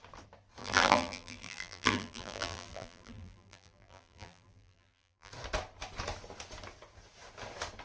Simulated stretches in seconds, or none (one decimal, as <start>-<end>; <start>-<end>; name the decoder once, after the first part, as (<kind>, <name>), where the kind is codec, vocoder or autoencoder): 0.6-5.3 (vocoder, BigVGAN v2)